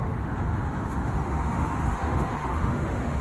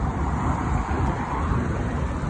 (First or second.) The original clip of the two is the second